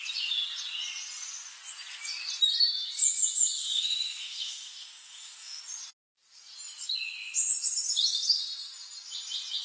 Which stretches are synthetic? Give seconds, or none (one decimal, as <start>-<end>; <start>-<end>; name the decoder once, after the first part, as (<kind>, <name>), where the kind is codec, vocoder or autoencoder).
3.6-5.6 (autoencoder, DAC-VAE)